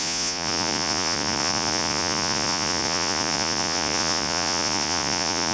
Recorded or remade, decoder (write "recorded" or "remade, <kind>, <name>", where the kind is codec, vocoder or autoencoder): remade, vocoder, Vocos